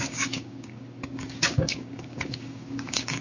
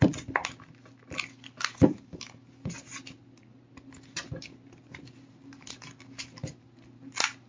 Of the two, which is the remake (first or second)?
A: first